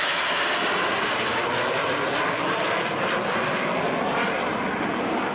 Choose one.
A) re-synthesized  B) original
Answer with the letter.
B